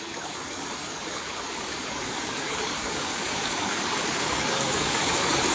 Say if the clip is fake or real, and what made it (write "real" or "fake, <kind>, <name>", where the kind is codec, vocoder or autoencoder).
fake, codec, DAC